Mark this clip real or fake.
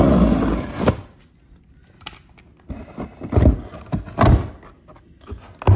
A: real